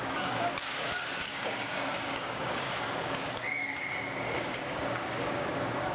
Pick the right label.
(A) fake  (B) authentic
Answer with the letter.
A